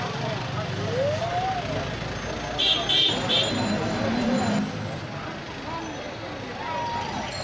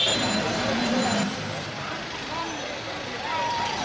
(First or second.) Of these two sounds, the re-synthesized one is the second